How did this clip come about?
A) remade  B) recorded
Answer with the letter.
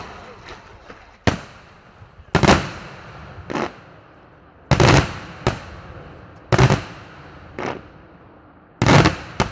B